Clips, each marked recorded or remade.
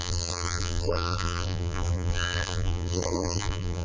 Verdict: remade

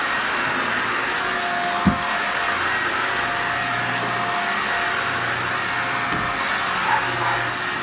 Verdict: recorded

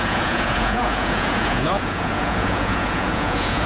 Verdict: remade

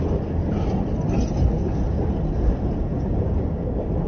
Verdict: recorded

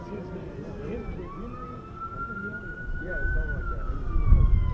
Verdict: remade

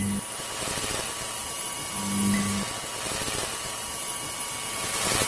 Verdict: remade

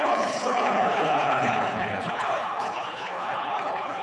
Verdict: remade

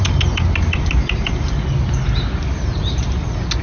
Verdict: recorded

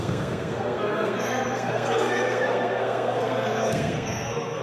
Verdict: remade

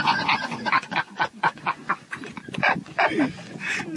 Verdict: remade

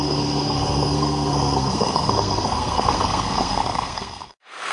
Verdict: remade